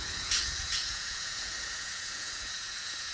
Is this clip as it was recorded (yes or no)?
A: no